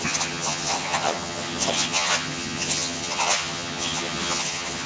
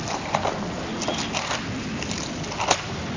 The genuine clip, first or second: second